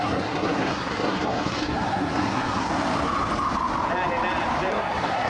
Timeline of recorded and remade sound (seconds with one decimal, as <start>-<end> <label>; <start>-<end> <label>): 0.0-2.7 remade; 2.7-4.7 recorded; 4.7-5.3 remade